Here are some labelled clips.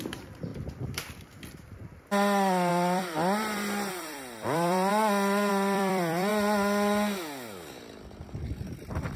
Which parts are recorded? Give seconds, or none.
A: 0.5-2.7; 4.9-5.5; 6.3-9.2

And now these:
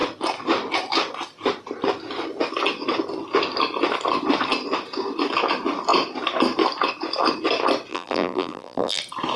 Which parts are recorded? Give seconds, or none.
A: 0.0-7.9; 9.0-9.4

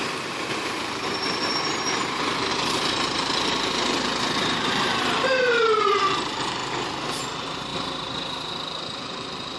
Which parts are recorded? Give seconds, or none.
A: 6.6-7.1; 7.7-9.0

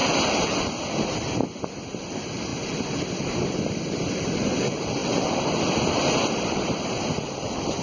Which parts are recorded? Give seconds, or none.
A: 0.0-0.9

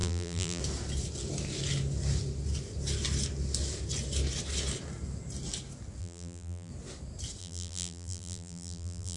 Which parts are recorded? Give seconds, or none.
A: 0.6-6.0; 6.7-7.4